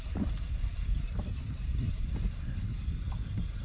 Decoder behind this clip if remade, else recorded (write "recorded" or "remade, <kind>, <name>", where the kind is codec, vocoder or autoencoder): recorded